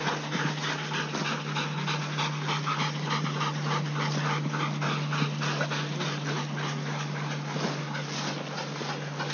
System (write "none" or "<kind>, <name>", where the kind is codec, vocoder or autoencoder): none